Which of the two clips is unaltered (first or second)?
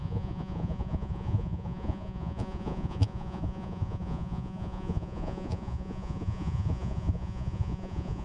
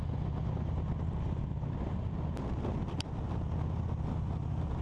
second